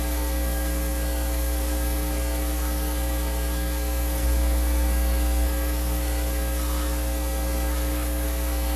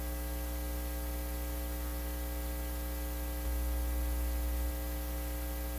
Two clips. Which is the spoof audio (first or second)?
first